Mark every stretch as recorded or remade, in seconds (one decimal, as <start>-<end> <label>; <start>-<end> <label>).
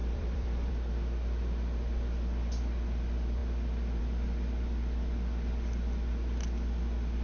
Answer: 0.0-0.7 remade; 0.7-7.2 recorded